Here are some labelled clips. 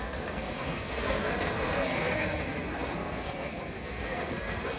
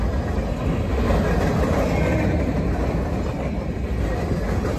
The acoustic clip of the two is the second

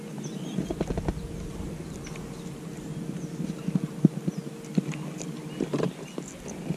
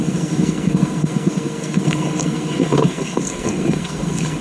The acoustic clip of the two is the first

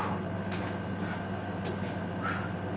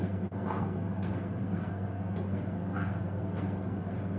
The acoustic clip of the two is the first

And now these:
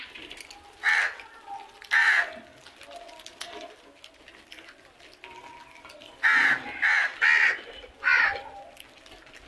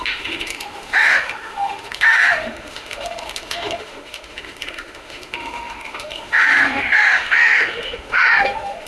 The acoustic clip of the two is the first